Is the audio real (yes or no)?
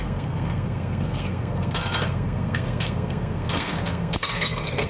no